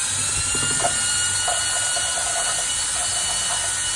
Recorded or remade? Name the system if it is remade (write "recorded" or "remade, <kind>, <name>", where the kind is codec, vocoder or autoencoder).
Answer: recorded